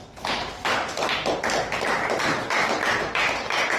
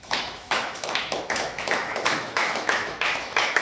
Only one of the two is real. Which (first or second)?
first